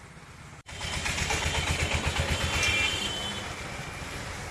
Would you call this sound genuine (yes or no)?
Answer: yes